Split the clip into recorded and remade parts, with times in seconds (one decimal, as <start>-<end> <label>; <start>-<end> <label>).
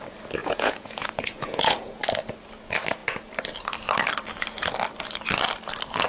0.0-0.4 recorded; 0.4-2.0 remade; 2.0-6.1 recorded